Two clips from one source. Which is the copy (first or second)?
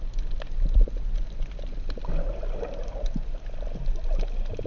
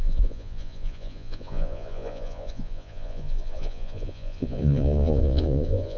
second